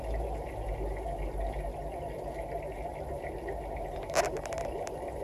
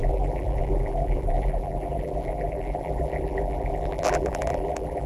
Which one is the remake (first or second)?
second